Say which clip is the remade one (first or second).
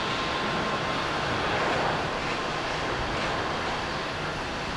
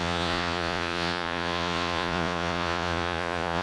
second